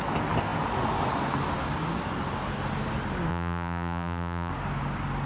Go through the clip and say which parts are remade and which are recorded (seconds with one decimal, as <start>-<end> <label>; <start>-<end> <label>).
0.0-3.3 recorded; 3.3-4.5 remade; 4.5-5.3 recorded